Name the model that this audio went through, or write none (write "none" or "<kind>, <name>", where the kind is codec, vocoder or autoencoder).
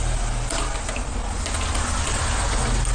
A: none